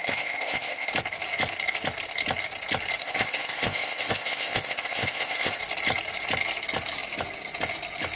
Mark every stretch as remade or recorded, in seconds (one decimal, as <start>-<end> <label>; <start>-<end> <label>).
0.0-0.9 remade; 0.9-3.0 recorded; 3.0-5.6 remade; 5.6-8.2 recorded